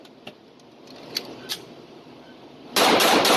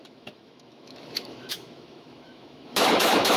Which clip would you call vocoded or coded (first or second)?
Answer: second